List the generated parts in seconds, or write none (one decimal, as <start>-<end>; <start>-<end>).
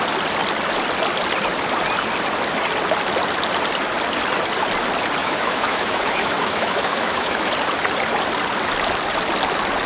5.2-7.5